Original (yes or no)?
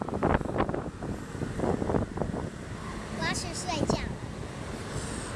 yes